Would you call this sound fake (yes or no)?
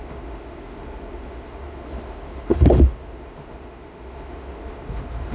yes